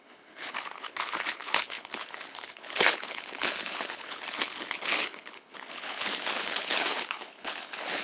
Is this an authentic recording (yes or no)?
no